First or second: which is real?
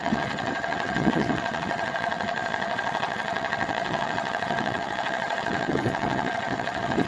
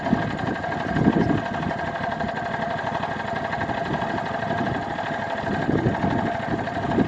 second